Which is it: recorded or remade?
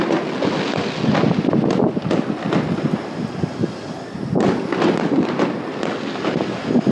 recorded